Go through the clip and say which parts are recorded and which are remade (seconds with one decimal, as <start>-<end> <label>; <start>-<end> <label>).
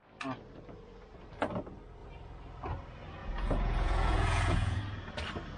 0.0-3.2 recorded; 3.2-4.8 remade; 4.8-5.6 recorded